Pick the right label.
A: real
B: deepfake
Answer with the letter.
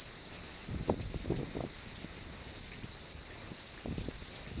A